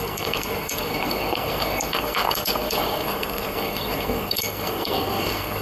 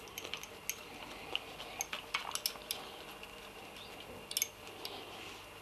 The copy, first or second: first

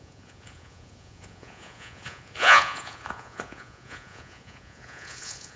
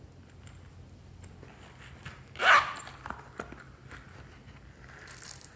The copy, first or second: first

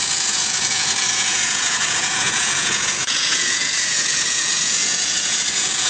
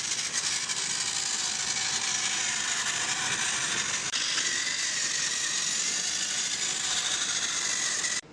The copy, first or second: first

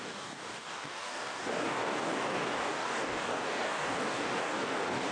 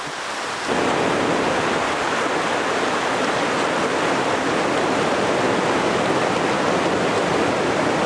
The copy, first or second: first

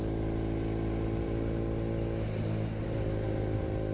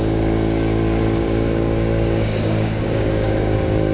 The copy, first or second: second